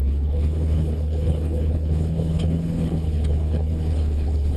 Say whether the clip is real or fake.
fake